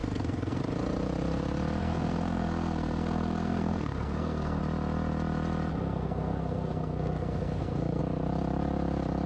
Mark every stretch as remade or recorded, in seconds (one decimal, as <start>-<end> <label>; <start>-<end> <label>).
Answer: 0.0-0.6 remade; 0.6-1.8 recorded; 1.8-4.6 remade; 4.6-5.7 recorded; 5.7-8.0 remade; 8.0-9.3 recorded